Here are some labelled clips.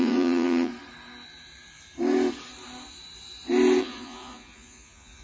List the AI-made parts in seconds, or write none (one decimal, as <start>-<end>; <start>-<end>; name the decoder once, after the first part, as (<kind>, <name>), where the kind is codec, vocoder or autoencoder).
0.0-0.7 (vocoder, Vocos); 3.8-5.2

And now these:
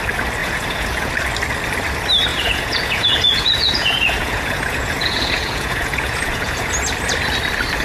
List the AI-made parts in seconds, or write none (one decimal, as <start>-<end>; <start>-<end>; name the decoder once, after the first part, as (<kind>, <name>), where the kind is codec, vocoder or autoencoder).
0.4-1.1 (vocoder, Vocos); 2.3-6.8

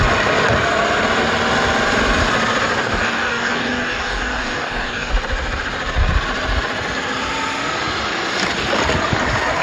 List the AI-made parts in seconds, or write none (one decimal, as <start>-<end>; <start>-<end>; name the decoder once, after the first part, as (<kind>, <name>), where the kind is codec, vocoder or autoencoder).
2.8-5.1 (codec, DAC)

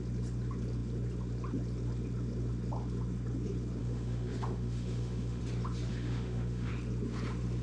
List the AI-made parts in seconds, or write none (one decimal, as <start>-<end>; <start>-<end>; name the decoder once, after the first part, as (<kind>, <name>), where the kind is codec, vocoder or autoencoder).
3.8-5.4 (autoencoder, DAC-VAE); 5.9-6.7

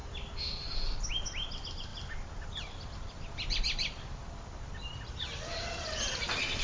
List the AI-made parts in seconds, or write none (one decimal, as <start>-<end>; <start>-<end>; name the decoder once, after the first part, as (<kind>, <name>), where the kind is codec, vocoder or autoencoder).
1.9-5.4 (vocoder, BigVGAN v2)